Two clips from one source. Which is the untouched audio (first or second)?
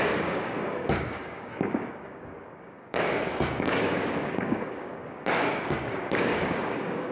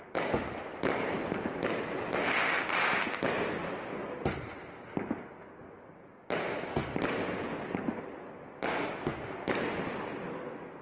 second